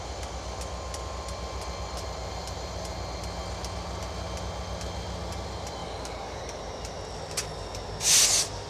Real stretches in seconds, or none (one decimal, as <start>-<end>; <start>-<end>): 0.0-5.8; 6.6-8.7